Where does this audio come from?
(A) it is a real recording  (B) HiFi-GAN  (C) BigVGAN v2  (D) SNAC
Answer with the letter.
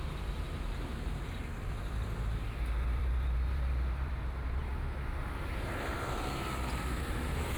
C